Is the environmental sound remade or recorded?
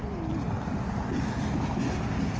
recorded